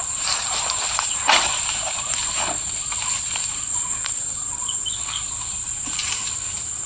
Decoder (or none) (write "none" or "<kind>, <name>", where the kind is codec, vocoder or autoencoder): vocoder, BigVGAN v2